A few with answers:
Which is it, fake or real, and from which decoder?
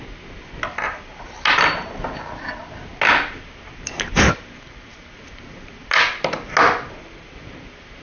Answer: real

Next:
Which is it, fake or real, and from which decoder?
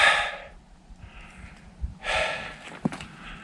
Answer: real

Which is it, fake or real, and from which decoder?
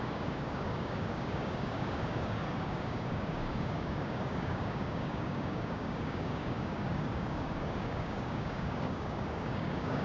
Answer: fake, codec, DAC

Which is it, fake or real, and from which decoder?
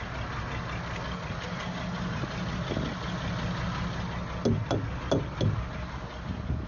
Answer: real